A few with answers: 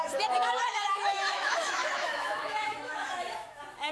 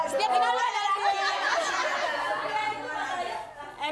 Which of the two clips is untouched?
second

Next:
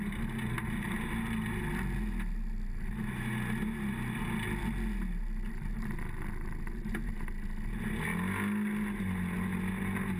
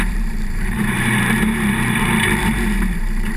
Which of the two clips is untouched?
first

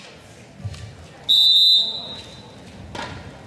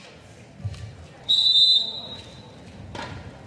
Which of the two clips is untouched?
first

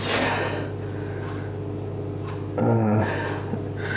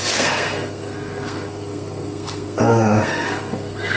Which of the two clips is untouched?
first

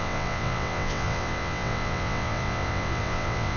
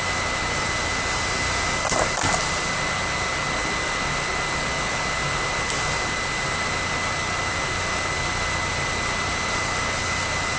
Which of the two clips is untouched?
second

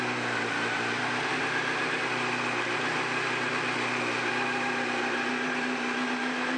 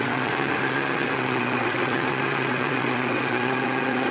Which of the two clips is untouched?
first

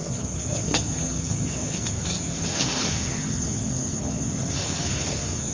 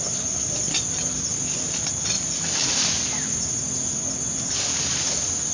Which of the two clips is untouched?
second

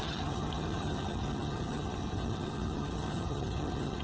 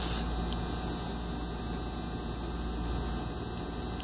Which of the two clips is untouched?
second